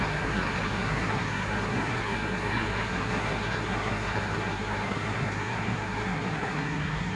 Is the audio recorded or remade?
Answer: remade